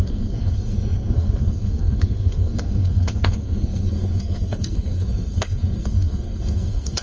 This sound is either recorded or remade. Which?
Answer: remade